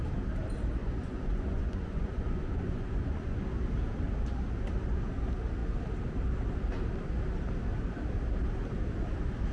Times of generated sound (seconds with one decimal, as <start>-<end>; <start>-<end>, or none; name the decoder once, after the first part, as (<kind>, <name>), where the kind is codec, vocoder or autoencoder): 0.8-3.4 (vocoder, Vocos)